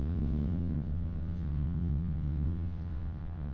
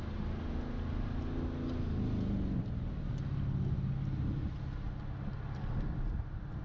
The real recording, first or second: second